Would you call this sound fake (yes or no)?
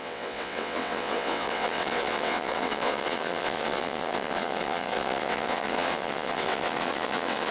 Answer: yes